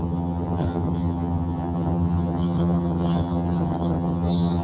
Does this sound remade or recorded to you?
remade